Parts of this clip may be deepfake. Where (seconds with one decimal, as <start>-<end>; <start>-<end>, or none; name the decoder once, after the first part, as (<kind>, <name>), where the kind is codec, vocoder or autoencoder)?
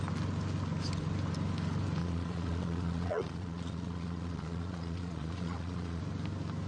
2.0-6.0 (vocoder, Vocos)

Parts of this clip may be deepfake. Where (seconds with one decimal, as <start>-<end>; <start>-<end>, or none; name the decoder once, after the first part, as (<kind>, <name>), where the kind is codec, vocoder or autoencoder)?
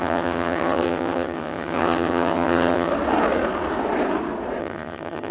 0.0-2.9 (vocoder, HiFi-GAN); 4.6-5.3